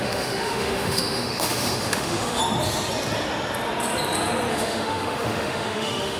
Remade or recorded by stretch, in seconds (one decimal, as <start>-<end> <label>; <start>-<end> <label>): 0.0-2.4 remade; 2.4-4.5 recorded; 4.5-6.2 remade